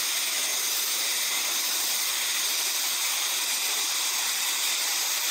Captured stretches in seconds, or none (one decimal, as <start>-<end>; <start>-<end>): 0.0-5.3

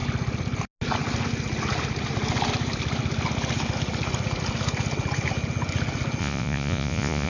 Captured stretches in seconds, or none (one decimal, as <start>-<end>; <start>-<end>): 0.0-6.2

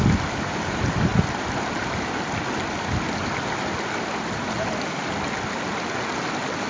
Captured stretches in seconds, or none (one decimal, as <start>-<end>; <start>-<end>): 0.0-6.7

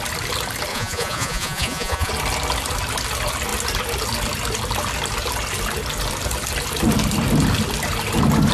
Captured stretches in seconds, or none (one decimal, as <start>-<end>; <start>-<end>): 0.0-0.7; 2.1-8.5

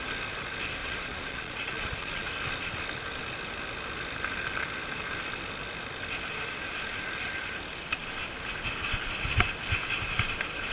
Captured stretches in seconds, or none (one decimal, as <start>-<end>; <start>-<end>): 0.0-0.8; 2.3-10.7

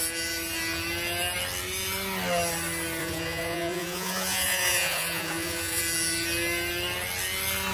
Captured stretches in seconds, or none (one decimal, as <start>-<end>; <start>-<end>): 0.0-3.0; 5.8-7.7

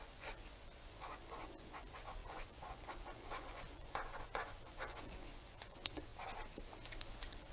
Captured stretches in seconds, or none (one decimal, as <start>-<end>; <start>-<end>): 6.1-7.1

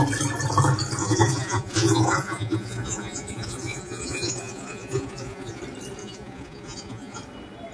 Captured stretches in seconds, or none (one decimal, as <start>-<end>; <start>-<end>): 0.0-1.0; 5.6-6.0; 7.2-7.7